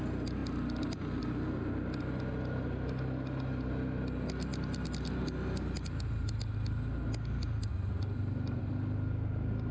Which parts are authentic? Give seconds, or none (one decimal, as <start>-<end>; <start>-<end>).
0.0-9.7